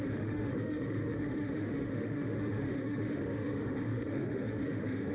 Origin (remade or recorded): remade